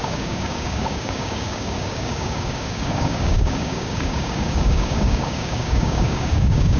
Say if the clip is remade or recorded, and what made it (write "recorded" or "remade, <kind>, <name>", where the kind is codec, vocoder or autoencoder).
remade, codec, DAC